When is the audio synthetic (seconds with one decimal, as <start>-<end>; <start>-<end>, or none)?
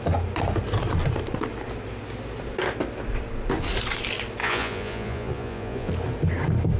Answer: 4.4-5.9